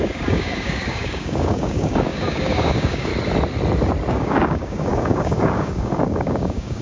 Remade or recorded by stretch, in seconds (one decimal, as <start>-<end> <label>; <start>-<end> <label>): 0.0-3.1 remade; 3.1-4.1 recorded; 4.1-6.8 remade